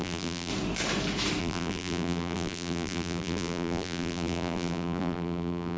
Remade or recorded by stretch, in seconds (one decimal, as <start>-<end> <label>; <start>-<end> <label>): 0.0-0.5 remade; 0.5-1.4 recorded; 1.4-5.8 remade